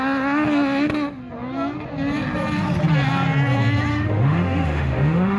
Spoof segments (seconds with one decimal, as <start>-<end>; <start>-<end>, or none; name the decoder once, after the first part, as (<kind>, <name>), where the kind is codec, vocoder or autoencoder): 3.9-5.4 (autoencoder, DAC-VAE)